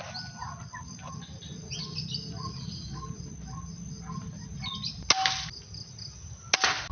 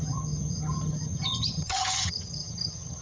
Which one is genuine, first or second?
first